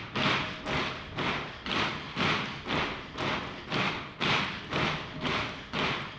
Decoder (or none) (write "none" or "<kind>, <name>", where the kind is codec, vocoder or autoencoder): none